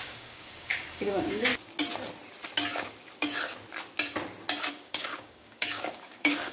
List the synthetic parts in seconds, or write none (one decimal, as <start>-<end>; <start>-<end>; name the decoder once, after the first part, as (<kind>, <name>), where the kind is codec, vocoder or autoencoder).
0.0-1.5 (codec, DAC); 4.7-6.5